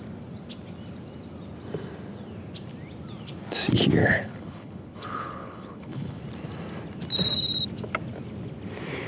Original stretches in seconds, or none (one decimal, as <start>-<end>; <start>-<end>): 0.0-4.0; 6.2-9.1